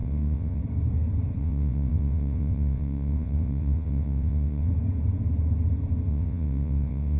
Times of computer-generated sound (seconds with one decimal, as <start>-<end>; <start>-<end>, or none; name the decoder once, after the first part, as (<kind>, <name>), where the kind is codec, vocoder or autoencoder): 0.0-0.6 (vocoder, WaveNeXt); 1.4-4.7; 6.1-7.2